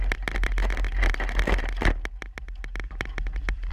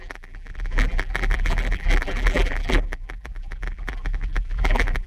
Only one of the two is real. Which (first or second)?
first